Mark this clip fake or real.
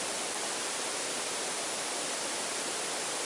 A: real